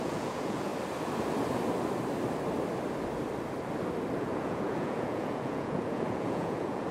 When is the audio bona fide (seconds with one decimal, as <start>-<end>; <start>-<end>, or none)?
0.7-4.2

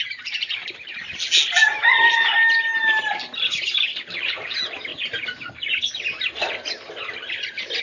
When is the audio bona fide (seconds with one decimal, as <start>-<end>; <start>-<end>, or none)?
0.0-7.8

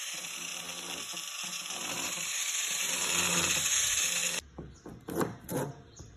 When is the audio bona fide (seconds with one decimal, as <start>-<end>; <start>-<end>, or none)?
0.5-1.3; 4.2-5.0

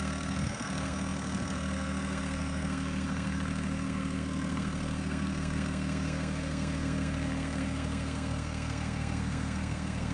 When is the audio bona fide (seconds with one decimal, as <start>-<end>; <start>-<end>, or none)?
none